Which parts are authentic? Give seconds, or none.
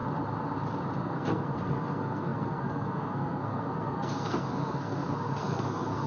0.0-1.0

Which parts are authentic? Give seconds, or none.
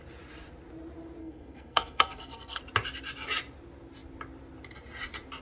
0.0-1.2; 2.6-5.4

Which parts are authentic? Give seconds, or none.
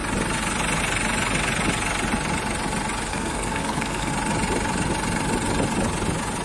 0.0-3.1; 4.1-6.4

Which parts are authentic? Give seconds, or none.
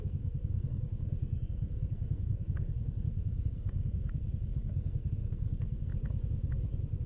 5.9-7.1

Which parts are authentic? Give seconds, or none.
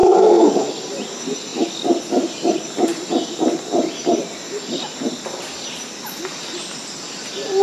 0.7-7.6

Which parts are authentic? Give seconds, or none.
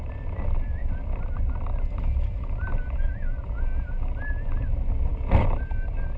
0.0-6.2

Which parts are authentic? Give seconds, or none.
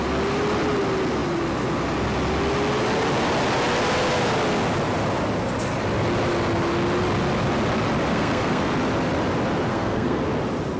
0.0-8.1; 8.7-9.7; 10.2-10.8